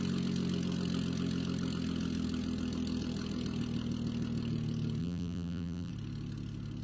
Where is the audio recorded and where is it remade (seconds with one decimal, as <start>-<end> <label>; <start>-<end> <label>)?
0.0-5.0 recorded; 5.0-5.9 remade; 5.9-6.8 recorded